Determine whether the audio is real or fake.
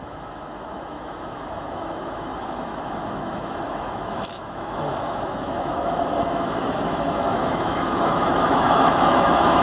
fake